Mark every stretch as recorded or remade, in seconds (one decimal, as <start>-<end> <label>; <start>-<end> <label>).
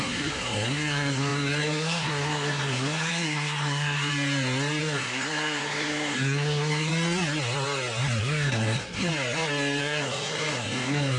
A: 0.0-4.1 remade; 4.1-4.8 recorded; 4.8-6.9 remade; 6.9-8.2 recorded; 8.2-9.1 remade; 9.1-9.8 recorded; 9.8-11.2 remade